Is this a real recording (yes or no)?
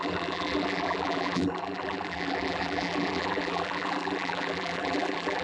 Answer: no